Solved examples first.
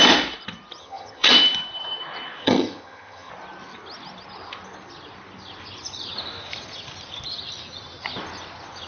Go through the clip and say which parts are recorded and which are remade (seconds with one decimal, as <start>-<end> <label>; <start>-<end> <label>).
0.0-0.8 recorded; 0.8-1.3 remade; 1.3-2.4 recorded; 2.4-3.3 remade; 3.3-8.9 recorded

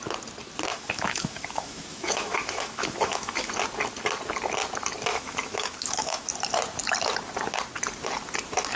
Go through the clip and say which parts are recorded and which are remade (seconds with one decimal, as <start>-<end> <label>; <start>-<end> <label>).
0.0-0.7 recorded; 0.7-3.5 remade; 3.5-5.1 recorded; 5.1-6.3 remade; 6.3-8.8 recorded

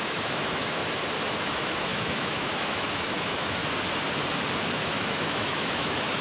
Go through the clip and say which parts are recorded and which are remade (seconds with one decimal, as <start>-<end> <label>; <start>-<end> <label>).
0.0-0.8 remade; 0.8-1.3 recorded; 1.3-3.6 remade; 3.6-4.7 recorded; 4.7-6.2 remade

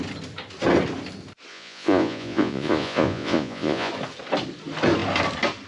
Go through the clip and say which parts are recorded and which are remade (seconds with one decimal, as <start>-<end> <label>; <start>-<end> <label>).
0.0-1.5 recorded; 1.5-3.9 remade; 3.9-5.7 recorded

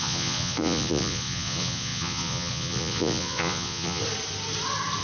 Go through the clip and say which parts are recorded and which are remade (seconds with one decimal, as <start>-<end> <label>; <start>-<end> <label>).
0.0-4.0 remade; 4.0-5.0 recorded